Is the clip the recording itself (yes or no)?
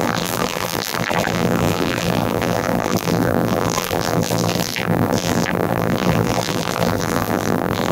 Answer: no